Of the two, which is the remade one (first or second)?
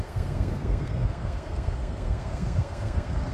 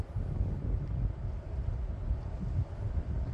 first